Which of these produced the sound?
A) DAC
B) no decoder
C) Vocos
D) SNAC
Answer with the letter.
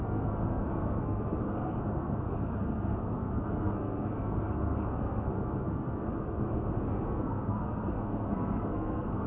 D